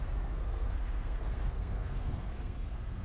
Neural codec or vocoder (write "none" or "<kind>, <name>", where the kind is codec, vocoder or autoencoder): codec, SNAC